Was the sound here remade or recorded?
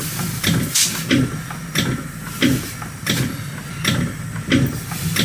recorded